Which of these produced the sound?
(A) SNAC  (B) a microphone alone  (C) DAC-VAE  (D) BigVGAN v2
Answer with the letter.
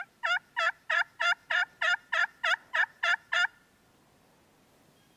B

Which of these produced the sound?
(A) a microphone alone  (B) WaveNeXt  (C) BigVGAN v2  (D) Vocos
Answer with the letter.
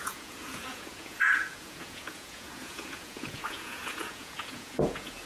D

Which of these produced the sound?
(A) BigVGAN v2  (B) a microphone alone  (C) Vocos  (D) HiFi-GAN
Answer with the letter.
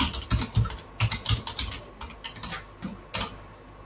B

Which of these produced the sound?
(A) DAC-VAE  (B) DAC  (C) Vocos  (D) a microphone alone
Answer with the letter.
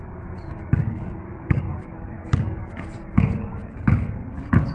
B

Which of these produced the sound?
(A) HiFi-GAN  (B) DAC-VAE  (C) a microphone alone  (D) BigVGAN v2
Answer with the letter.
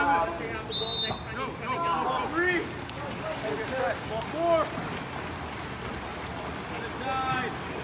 C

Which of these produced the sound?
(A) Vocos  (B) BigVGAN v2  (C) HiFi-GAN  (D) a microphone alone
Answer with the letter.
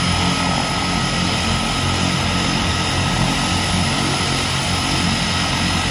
D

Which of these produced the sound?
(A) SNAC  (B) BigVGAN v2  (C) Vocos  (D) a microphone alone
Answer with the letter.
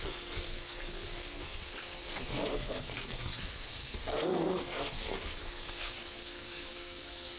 A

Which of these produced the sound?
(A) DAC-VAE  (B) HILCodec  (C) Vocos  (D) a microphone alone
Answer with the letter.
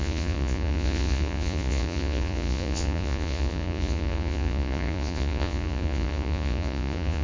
C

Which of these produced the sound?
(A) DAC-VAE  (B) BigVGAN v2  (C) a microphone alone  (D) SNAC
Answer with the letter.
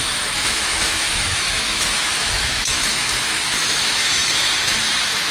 A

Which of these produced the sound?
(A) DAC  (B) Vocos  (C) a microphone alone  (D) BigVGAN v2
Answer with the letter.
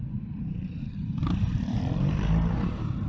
D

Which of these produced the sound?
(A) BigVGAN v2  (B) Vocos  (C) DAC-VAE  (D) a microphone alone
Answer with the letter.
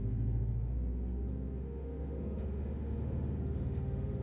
C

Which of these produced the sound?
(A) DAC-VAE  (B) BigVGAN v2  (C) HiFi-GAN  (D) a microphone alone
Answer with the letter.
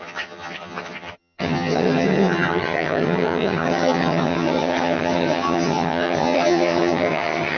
C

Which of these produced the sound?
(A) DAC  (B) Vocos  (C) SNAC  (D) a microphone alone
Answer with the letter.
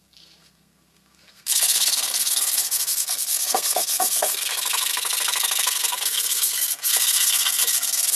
C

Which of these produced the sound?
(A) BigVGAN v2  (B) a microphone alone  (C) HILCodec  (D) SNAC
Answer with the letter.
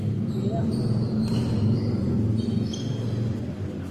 B